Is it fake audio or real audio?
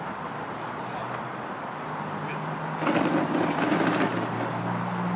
real